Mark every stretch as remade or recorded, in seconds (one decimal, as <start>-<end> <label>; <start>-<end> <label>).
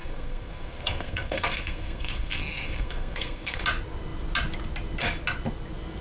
0.0-3.6 remade; 3.6-6.0 recorded